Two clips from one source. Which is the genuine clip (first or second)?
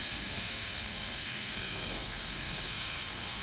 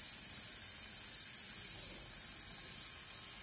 second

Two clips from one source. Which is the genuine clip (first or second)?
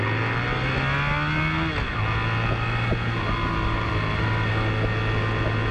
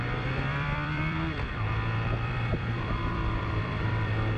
first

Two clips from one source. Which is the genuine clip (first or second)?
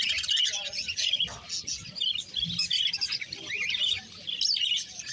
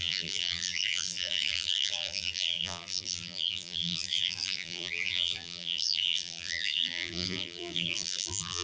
first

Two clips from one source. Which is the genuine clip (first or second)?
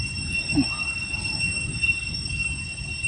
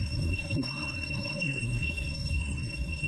first